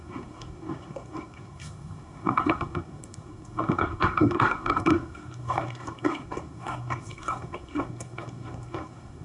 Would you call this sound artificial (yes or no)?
yes